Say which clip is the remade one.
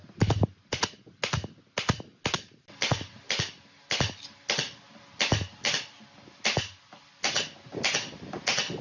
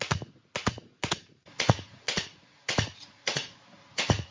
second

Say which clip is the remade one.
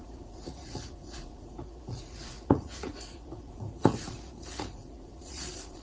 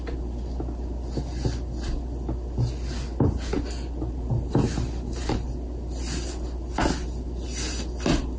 first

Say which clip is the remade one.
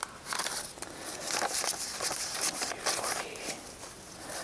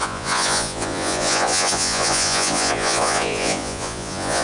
second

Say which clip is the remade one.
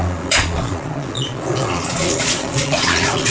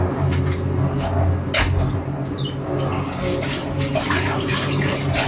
first